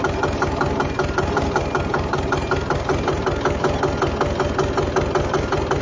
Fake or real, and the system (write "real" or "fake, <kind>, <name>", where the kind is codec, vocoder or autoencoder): real